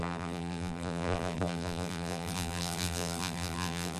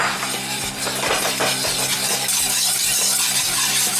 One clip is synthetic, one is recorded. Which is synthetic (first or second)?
first